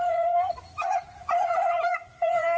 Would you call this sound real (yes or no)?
no